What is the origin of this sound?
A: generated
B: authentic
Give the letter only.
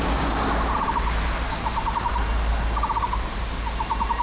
B